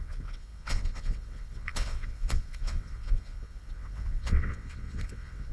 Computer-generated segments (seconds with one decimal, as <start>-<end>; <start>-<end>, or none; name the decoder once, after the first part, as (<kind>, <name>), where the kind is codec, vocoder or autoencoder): 0.0-5.5 (vocoder, WaveNeXt)